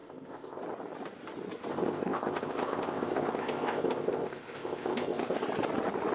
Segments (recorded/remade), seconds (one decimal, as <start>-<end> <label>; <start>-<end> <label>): 0.0-0.6 remade; 0.6-1.7 recorded; 1.7-5.4 remade; 5.4-6.1 recorded